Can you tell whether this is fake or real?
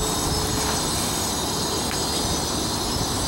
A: real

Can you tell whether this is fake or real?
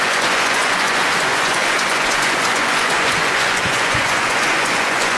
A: fake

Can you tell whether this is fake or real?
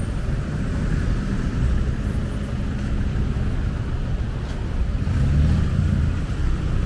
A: real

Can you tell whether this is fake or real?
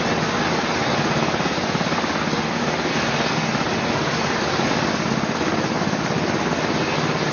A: real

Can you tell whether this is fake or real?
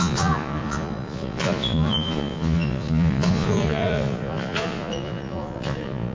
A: fake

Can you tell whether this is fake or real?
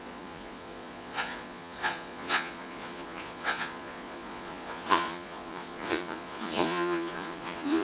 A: fake